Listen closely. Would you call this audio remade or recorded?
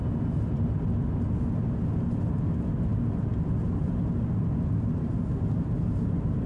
recorded